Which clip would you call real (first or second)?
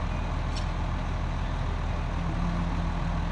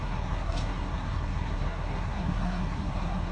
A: first